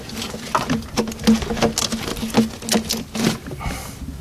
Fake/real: real